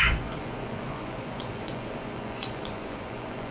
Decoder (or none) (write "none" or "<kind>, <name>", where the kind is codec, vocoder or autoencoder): vocoder, Vocos